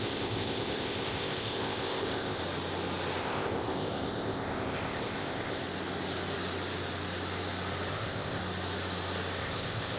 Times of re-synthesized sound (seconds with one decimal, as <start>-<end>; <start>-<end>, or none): 0.0-2.4; 3.2-5.6; 7.9-8.4; 9.4-10.0